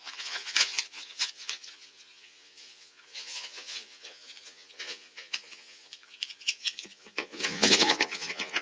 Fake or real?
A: fake